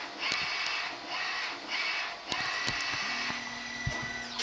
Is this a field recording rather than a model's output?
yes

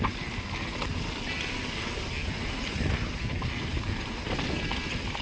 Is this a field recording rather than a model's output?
yes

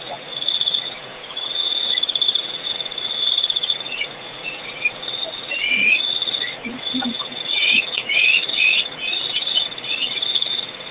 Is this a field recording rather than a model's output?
no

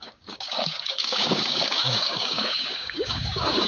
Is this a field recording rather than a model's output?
no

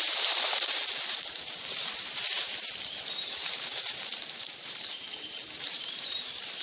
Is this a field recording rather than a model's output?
no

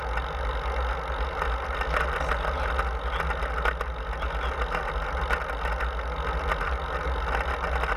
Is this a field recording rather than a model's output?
yes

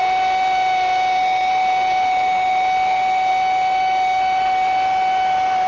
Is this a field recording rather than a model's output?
yes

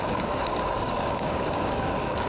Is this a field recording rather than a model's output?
no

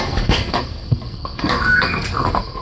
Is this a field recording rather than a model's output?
no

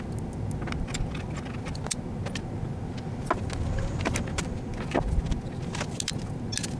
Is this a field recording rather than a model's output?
yes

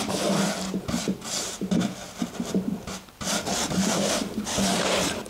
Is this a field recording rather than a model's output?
yes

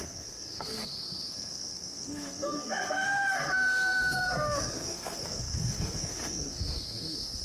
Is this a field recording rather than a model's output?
no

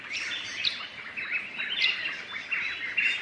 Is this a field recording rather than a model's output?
yes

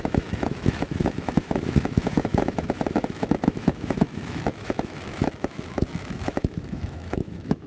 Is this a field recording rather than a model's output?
no